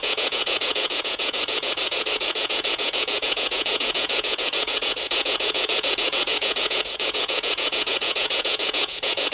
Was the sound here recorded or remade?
remade